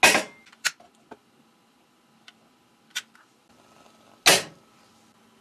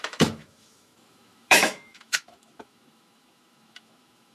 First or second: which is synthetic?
second